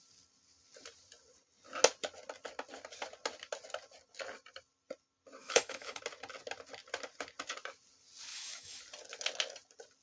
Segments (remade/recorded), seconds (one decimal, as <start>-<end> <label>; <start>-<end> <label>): 0.0-5.4 recorded; 5.4-6.0 remade; 6.0-8.3 recorded; 8.3-8.8 remade; 8.8-10.0 recorded